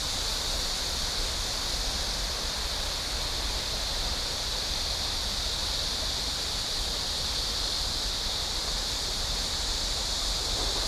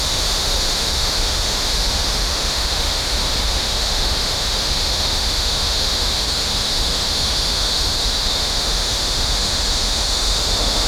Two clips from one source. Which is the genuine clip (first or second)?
first